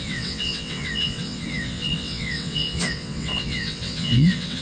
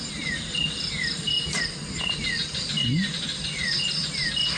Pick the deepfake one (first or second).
first